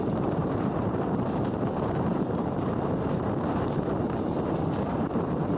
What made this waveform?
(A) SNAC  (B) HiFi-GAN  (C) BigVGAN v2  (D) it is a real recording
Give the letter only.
C